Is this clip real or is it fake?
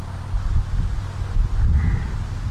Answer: real